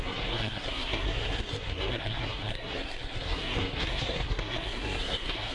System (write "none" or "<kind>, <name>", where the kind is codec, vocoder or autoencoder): codec, SNAC